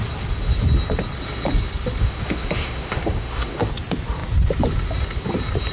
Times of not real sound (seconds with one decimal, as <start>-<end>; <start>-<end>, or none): 2.0-3.7